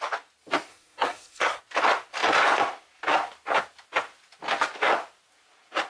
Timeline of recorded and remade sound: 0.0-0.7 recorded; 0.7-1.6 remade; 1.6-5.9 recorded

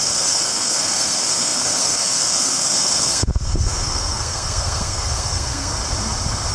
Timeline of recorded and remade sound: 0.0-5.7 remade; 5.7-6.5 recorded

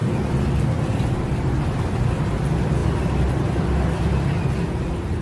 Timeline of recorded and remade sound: 0.0-5.2 recorded

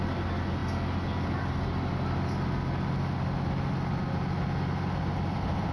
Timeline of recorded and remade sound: 0.0-5.7 recorded